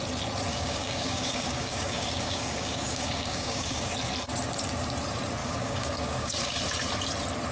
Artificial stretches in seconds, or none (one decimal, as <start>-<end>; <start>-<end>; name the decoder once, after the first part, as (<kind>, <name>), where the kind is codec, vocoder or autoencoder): 0.5-3.9 (codec, DAC); 5.4-6.6